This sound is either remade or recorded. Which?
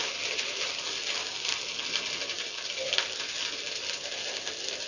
recorded